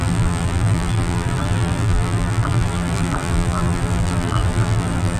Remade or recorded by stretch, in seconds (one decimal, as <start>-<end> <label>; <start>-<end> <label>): 0.0-5.2 remade